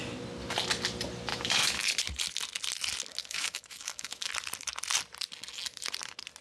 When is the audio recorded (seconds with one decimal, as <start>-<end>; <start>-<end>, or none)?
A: 0.0-1.3; 1.9-3.2; 4.3-6.4